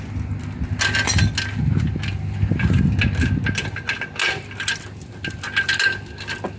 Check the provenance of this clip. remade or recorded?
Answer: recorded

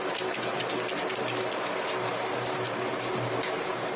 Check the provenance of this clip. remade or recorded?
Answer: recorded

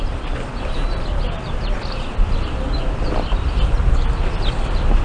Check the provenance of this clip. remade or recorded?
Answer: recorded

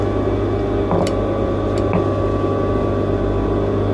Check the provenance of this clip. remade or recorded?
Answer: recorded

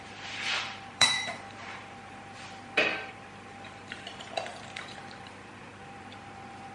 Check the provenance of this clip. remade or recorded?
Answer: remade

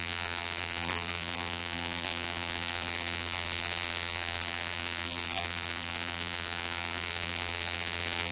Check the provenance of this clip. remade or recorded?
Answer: remade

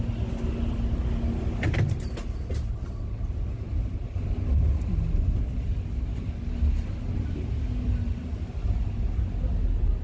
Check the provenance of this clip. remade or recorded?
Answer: recorded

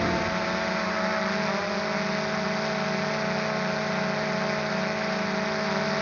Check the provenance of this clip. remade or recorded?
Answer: recorded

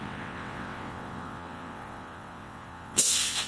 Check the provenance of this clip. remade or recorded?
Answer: remade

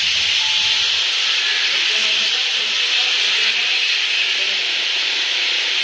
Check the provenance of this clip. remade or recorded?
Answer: recorded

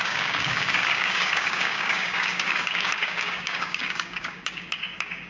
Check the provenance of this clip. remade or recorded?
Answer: remade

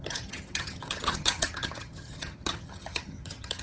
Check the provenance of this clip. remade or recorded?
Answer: remade